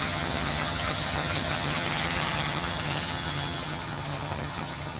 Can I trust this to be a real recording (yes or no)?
no